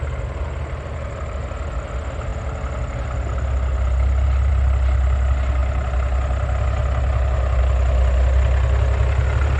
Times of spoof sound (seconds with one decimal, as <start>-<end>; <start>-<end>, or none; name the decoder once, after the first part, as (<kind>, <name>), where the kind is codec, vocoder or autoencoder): none